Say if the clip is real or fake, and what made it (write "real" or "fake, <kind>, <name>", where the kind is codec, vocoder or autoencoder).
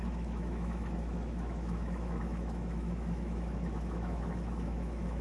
fake, autoencoder, DAC-VAE